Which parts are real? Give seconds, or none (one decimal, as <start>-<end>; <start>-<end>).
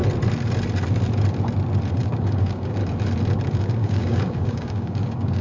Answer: 0.0-1.9; 2.8-3.6